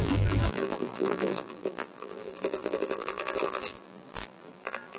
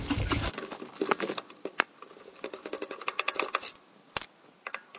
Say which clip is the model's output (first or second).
first